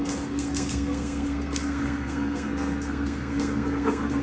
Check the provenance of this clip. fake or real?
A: fake